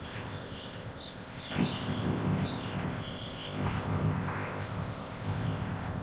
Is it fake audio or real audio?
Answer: fake